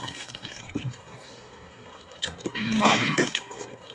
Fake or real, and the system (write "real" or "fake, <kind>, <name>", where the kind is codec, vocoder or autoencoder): fake, codec, SNAC